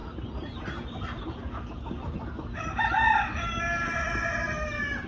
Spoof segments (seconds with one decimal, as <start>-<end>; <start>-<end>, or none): none